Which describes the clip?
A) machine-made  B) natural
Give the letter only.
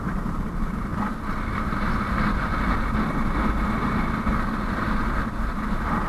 B